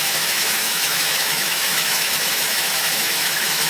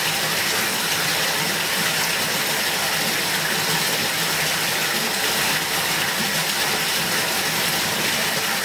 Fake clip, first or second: first